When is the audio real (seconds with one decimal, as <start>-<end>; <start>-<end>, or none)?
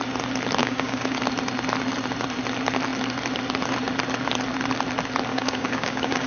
0.0-0.6; 1.2-5.3